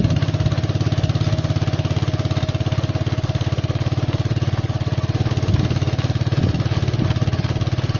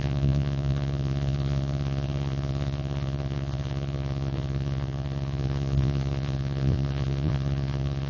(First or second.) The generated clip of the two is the second